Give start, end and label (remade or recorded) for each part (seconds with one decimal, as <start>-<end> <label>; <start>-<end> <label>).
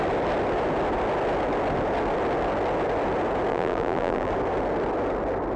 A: 0.0-3.5 recorded; 3.5-4.3 remade; 4.3-5.6 recorded